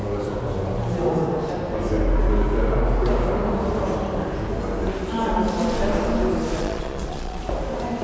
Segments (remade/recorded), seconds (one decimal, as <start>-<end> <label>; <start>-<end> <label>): 0.0-6.6 recorded; 6.6-7.4 remade; 7.4-8.0 recorded